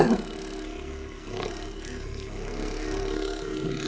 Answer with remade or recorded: remade